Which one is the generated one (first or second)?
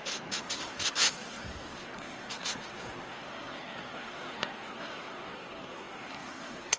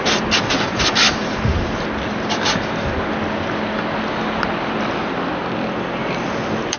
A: first